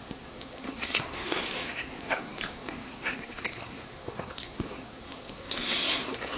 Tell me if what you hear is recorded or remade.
remade